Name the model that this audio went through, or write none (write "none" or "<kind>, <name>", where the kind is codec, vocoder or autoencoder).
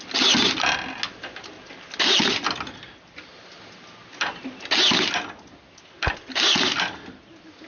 none